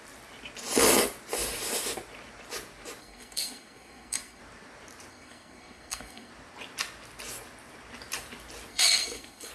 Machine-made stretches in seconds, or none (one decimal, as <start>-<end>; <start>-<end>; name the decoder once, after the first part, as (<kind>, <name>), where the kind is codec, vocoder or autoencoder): 3.0-4.4 (codec, SNAC); 5.1-6.3; 8.7-9.5